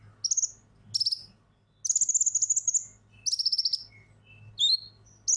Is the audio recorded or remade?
recorded